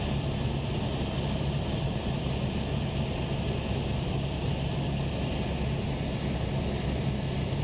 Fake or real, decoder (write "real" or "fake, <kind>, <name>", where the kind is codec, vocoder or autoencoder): real